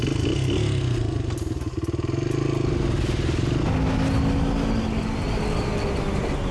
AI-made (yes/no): no